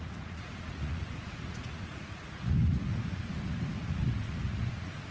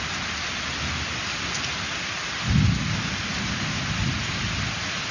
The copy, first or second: first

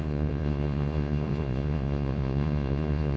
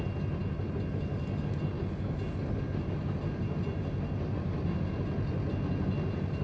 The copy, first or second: first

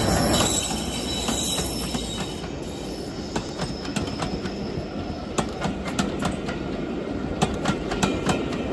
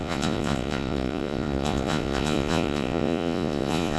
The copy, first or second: second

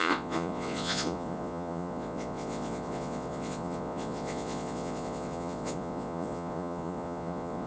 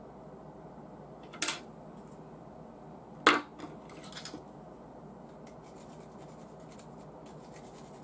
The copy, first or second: first